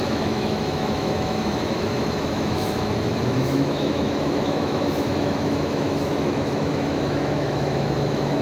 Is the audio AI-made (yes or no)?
yes